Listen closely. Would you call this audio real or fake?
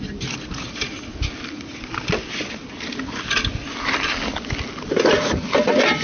real